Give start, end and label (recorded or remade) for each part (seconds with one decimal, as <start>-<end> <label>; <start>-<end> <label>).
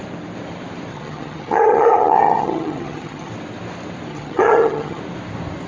0.0-0.9 recorded; 0.9-3.3 remade; 3.3-4.1 recorded; 4.1-5.0 remade; 5.0-5.7 recorded